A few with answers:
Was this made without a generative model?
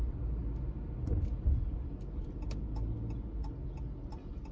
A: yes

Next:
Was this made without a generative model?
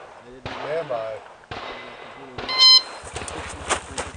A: yes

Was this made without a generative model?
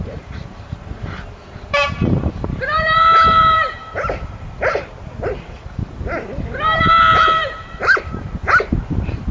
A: no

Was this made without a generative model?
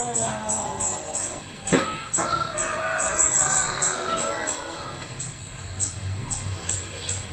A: no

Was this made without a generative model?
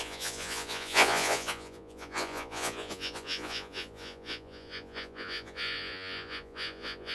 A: no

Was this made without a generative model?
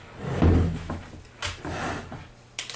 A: yes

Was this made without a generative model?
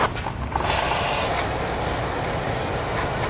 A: yes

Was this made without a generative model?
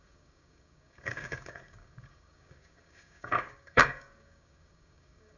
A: no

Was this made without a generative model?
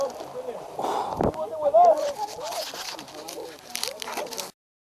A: yes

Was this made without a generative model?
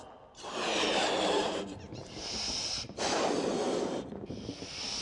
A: yes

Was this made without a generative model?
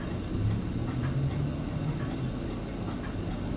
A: yes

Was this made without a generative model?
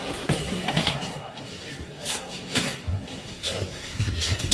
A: no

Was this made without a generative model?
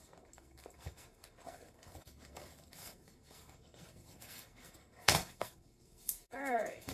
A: no